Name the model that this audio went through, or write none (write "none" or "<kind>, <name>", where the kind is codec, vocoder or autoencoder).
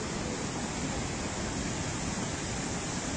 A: none